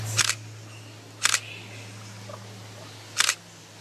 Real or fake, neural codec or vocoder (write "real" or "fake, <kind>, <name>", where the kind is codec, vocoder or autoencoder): real